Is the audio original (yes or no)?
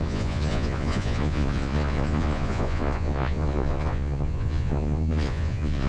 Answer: no